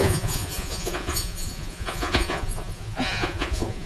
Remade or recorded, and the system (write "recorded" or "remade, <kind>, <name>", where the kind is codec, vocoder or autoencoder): remade, vocoder, Vocos